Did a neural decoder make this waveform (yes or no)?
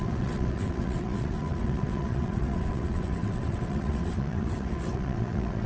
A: yes